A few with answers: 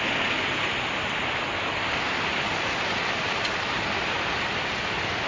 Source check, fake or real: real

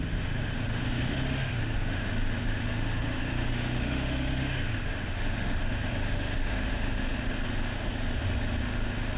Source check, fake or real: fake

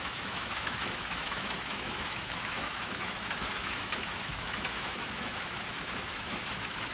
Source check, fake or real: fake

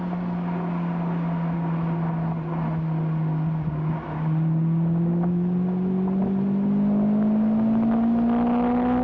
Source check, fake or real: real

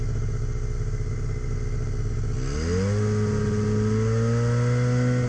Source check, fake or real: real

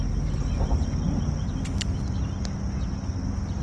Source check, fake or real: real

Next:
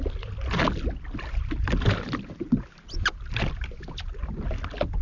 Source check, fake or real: real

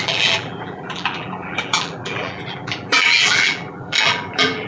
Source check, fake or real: fake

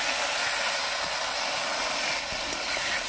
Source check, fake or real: real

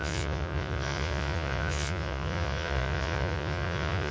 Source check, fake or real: fake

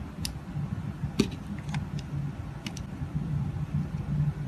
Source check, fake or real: real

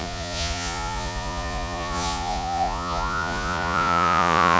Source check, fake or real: fake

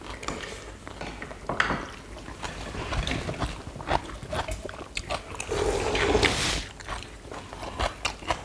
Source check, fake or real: real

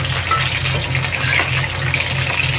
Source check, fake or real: real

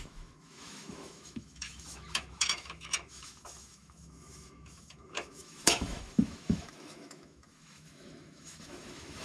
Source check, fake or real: fake